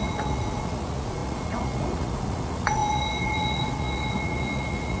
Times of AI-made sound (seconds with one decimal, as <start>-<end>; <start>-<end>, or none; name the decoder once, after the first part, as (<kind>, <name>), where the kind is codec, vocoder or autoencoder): 0.0-5.0 (vocoder, Vocos)